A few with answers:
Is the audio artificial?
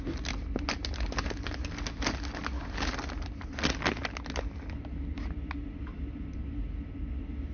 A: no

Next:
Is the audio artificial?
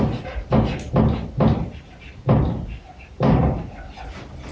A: no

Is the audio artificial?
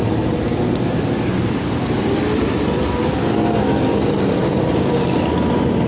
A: no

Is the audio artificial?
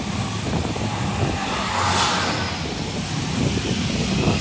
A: no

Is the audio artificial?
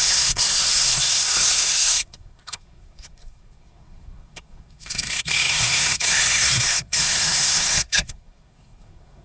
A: yes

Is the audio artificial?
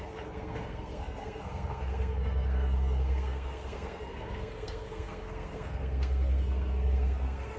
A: yes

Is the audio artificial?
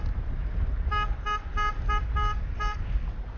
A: no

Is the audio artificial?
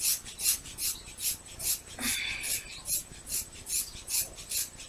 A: no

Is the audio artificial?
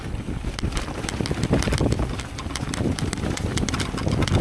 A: no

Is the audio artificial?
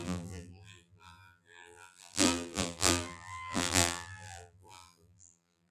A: yes